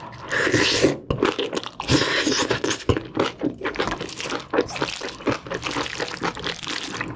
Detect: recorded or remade recorded